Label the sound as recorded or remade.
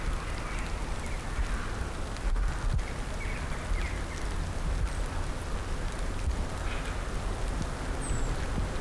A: recorded